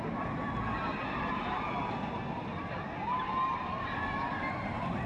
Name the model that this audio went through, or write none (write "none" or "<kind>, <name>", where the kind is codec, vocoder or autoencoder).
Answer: none